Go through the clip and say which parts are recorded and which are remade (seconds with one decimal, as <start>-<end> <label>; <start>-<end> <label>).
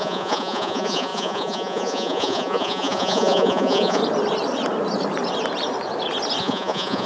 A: 0.0-4.0 remade; 4.0-6.4 recorded; 6.4-7.1 remade